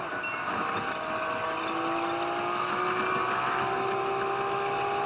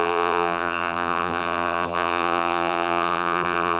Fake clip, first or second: second